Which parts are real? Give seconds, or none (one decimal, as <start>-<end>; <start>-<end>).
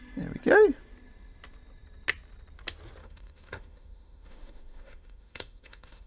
0.0-3.0